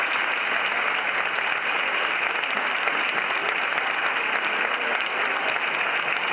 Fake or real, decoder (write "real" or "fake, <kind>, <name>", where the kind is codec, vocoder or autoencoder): real